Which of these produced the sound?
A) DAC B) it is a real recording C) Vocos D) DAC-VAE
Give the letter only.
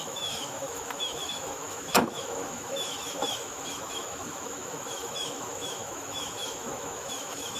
D